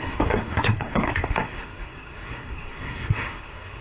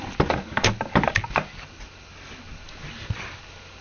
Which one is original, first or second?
second